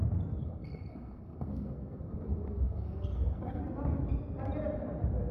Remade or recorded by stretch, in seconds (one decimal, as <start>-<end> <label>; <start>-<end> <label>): 0.0-0.4 recorded; 0.4-3.6 remade; 3.6-5.3 recorded